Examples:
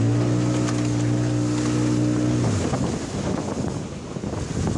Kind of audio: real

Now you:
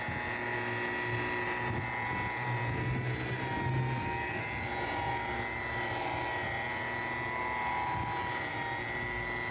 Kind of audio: real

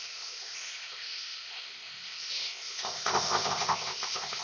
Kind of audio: fake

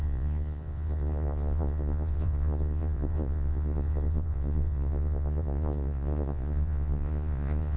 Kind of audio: fake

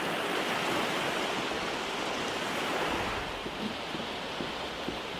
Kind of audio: real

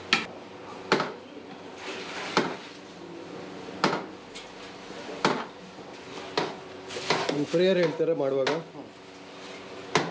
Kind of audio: real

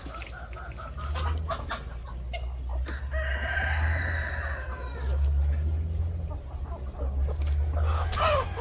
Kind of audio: real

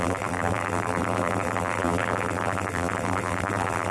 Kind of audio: fake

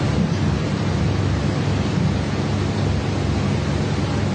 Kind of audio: real